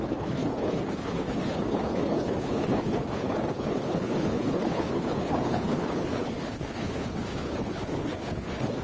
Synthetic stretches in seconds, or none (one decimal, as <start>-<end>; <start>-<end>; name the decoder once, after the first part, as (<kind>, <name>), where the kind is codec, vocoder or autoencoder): 0.0-8.8 (codec, HILCodec)